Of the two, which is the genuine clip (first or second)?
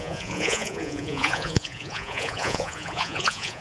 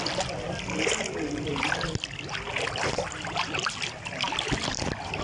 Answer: second